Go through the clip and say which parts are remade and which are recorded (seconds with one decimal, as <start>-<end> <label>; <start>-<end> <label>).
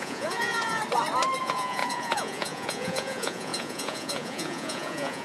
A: 0.0-0.8 remade; 0.8-1.4 recorded; 1.4-5.2 remade